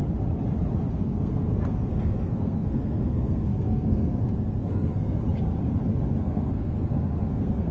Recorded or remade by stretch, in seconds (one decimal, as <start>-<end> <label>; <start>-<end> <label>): 0.0-0.9 recorded; 0.9-5.2 remade; 5.2-6.2 recorded; 6.2-7.7 remade